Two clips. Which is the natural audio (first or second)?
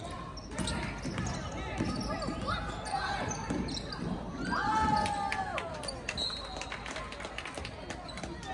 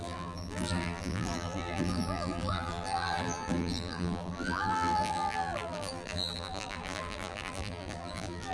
first